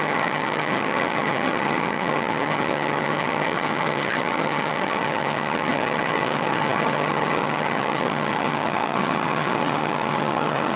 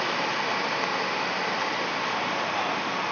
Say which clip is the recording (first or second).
second